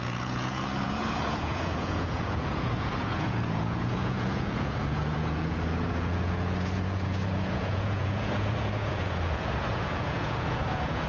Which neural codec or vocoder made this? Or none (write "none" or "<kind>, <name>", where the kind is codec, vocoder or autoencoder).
vocoder, Vocos